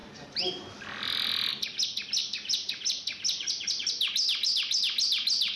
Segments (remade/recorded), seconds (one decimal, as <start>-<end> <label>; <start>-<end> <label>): 0.0-5.6 recorded